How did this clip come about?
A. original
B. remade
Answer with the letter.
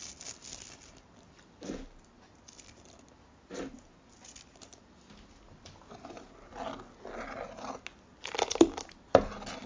A